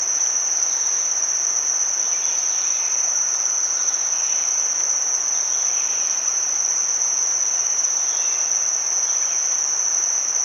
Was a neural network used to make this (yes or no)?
no